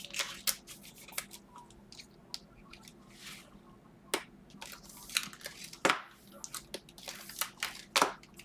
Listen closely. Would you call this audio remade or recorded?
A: recorded